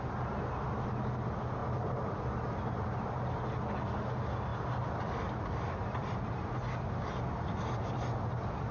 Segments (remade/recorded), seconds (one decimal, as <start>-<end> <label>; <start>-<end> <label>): 0.0-8.7 recorded